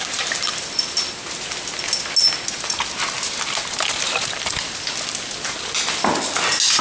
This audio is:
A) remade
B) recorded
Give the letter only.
B